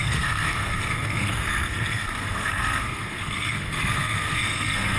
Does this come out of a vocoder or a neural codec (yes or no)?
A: yes